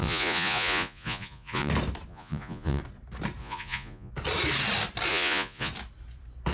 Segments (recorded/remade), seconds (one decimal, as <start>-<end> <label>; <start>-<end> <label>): 0.0-1.7 remade; 1.7-2.1 recorded; 2.1-2.8 remade; 2.8-3.4 recorded; 3.4-4.1 remade; 4.1-5.1 recorded; 5.1-5.7 remade; 5.7-6.5 recorded